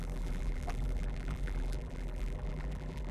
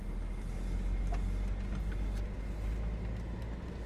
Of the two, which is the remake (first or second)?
first